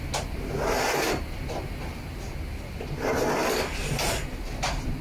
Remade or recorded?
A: recorded